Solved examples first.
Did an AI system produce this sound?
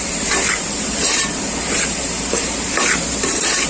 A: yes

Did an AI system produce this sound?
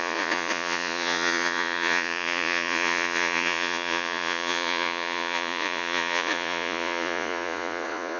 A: yes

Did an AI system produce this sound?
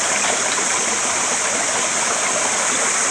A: no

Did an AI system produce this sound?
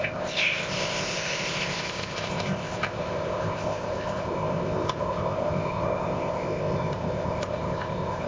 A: yes